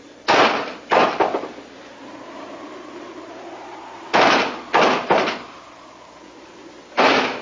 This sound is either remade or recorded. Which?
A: recorded